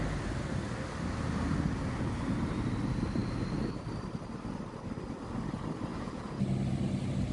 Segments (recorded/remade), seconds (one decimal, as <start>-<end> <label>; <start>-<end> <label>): 0.0-5.9 recorded; 5.9-6.4 remade; 6.4-7.3 recorded